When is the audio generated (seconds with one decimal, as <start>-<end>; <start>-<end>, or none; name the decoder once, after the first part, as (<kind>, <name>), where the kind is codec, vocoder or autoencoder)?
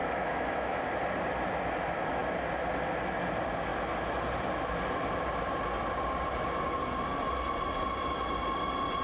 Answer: 0.0-0.8 (autoencoder, DAC-VAE)